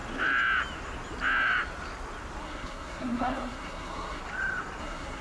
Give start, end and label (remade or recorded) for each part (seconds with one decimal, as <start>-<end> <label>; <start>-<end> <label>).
0.0-2.4 recorded; 2.4-4.2 remade; 4.2-4.8 recorded; 4.8-5.2 remade